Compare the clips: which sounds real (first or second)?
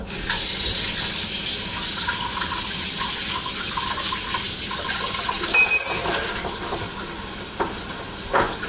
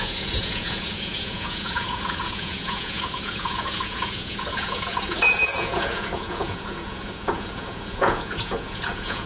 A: first